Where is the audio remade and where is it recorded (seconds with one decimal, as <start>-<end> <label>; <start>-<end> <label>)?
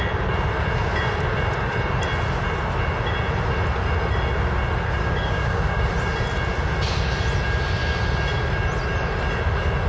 0.0-5.0 recorded; 5.0-5.9 remade; 5.9-9.9 recorded